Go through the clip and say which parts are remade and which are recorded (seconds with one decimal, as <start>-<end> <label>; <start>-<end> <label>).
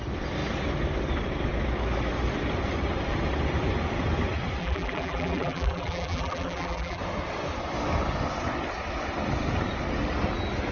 0.0-4.6 recorded; 4.6-7.0 remade; 7.0-10.7 recorded